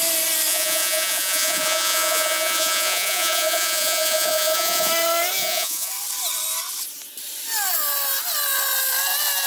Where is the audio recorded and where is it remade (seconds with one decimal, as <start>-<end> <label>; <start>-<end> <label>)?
0.0-0.5 recorded; 0.5-4.9 remade; 4.9-5.4 recorded; 5.4-5.9 remade; 5.9-9.5 recorded